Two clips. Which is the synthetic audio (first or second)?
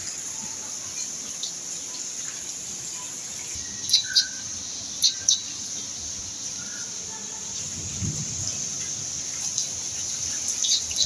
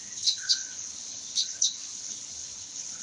second